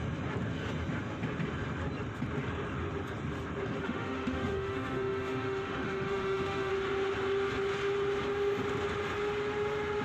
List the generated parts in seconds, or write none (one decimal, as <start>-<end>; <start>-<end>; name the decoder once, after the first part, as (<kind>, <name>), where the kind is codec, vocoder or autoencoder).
3.8-6.7 (autoencoder, DAC-VAE)